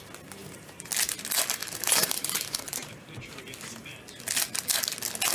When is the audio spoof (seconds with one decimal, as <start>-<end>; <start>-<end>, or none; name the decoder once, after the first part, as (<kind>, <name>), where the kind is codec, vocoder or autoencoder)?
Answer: 0.4-0.9 (vocoder, BigVGAN v2); 1.6-3.4